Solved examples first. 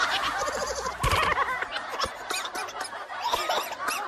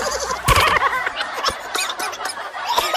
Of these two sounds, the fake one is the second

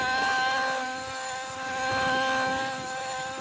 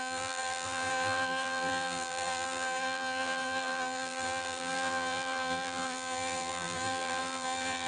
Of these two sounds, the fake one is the second